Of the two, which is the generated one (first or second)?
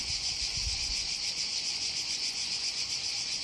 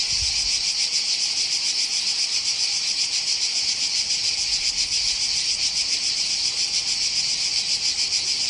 first